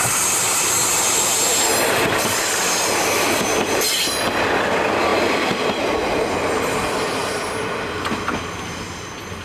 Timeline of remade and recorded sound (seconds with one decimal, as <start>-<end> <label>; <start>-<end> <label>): 0.0-9.4 recorded

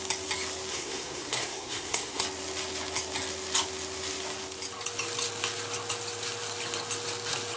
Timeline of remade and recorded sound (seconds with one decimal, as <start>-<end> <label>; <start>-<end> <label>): 0.0-0.7 recorded; 0.7-2.2 remade; 2.2-7.6 recorded

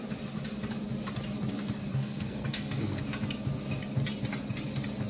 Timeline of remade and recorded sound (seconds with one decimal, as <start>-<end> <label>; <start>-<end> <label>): 0.0-1.9 recorded; 1.9-3.0 remade; 3.0-5.1 recorded

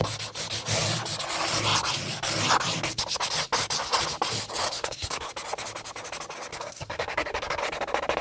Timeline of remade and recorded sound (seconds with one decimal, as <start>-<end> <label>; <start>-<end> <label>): 0.0-4.6 recorded; 4.6-5.3 remade; 5.3-6.5 recorded; 6.5-7.6 remade; 7.6-8.2 recorded

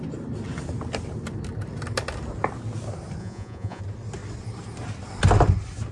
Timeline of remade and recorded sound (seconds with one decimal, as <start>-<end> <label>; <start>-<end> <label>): 0.0-3.2 recorded; 3.2-3.8 remade; 3.8-5.9 recorded